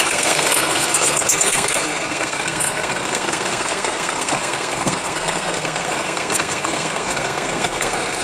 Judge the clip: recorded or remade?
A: remade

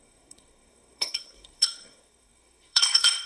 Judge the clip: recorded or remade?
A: remade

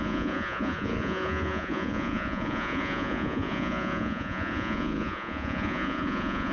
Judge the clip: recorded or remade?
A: remade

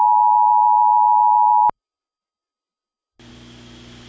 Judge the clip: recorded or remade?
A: recorded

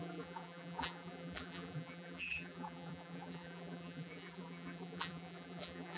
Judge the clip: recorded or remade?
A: remade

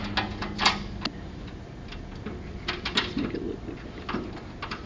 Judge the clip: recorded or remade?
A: recorded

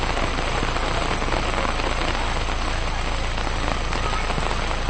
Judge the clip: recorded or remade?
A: recorded